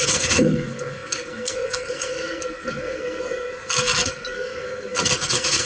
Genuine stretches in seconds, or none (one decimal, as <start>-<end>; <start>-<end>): none